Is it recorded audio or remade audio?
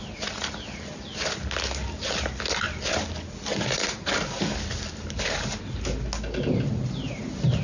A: recorded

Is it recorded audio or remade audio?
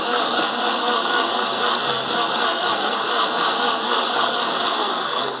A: remade